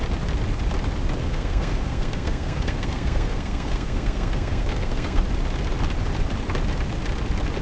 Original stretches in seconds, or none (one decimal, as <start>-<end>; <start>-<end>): 0.0-1.2; 5.2-7.6